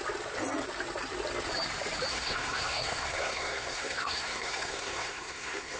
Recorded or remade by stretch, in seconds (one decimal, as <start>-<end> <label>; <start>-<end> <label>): 0.0-2.1 recorded; 2.1-5.8 remade